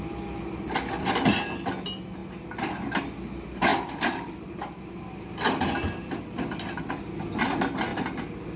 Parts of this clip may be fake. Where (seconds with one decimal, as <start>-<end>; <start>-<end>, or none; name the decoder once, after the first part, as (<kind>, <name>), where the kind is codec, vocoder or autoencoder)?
3.7-6.9 (vocoder, BigVGAN v2)